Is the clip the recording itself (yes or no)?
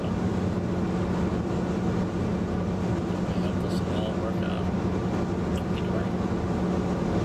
yes